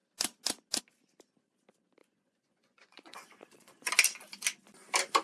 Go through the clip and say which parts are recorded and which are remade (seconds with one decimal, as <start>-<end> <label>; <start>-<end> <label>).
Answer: 0.0-2.0 recorded; 2.0-3.9 remade; 3.9-5.2 recorded

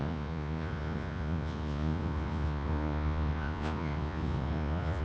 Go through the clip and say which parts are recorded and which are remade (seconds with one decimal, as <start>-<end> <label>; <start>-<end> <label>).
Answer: 0.0-5.0 remade

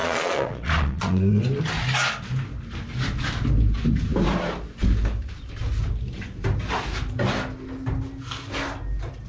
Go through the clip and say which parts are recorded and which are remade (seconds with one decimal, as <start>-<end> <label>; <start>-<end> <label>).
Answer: 0.0-1.4 remade; 1.4-9.3 recorded

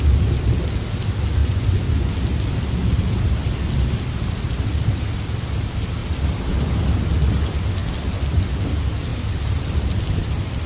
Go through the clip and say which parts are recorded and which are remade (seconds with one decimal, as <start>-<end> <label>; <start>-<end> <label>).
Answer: 0.0-1.4 recorded; 1.4-2.1 remade; 2.1-10.7 recorded

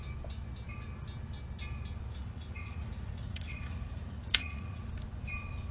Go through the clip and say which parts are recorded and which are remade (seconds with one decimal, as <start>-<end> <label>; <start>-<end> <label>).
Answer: 0.0-2.1 recorded; 2.1-4.9 remade; 4.9-5.7 recorded

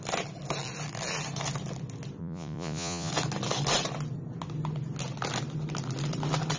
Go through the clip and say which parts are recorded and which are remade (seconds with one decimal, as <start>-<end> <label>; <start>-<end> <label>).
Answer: 0.0-2.2 recorded; 2.2-3.1 remade; 3.1-6.6 recorded